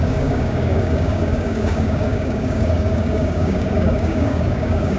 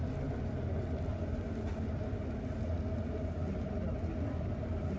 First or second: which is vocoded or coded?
first